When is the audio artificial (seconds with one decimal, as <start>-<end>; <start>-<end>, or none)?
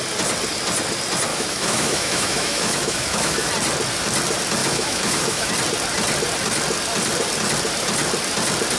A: 1.3-3.5; 4.6-5.5